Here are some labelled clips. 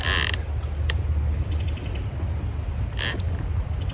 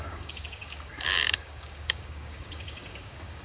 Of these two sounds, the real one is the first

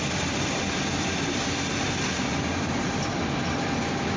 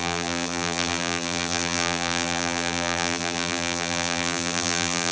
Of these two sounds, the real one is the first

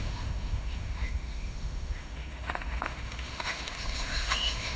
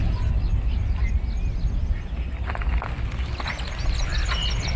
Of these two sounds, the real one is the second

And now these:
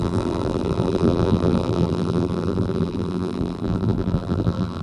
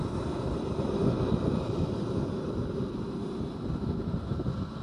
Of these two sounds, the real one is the second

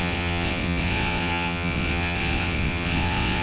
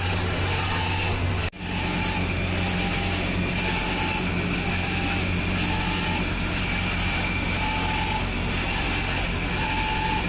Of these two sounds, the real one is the second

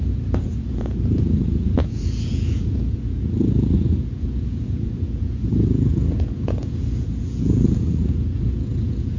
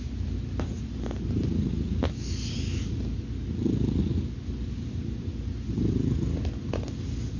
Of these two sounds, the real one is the second